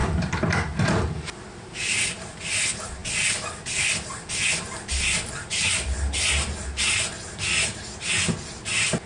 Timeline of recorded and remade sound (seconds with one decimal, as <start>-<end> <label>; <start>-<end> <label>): 0.0-9.1 recorded